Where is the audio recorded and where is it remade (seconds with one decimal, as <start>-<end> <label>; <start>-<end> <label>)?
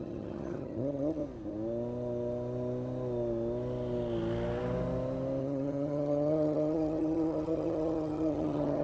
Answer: 0.0-1.2 remade; 1.2-5.4 recorded; 5.4-8.8 remade